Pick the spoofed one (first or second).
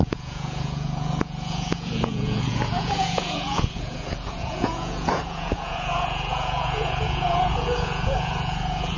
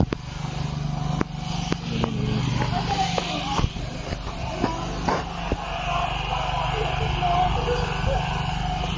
first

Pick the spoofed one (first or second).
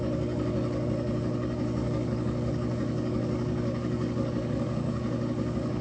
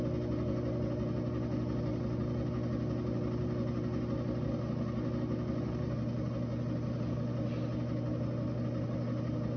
first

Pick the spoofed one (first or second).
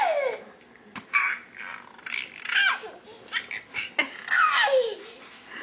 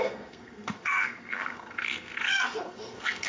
second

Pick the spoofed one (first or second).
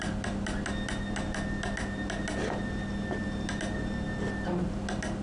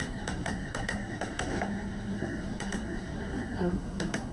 second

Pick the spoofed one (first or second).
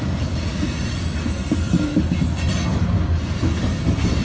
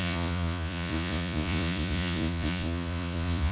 second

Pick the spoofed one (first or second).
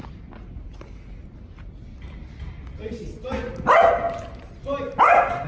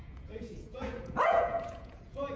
second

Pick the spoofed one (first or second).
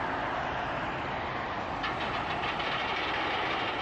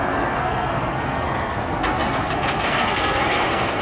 second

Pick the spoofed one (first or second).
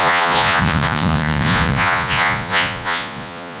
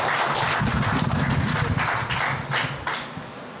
first